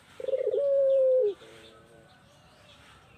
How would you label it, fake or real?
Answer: fake